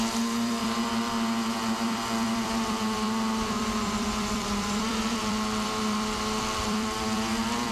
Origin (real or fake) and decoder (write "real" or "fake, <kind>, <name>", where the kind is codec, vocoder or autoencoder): fake, vocoder, BigVGAN v2